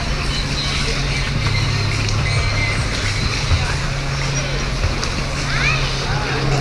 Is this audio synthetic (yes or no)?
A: no